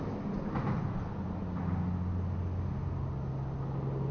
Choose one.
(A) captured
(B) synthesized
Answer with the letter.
A